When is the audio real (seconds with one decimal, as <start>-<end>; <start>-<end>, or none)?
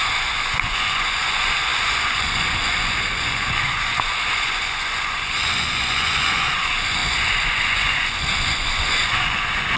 none